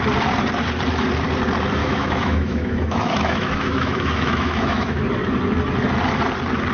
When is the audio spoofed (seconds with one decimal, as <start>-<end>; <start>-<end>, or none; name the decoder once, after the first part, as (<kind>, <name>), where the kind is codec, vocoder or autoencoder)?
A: 1.8-5.0 (autoencoder, DAC-VAE)